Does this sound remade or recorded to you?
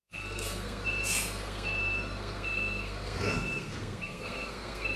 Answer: remade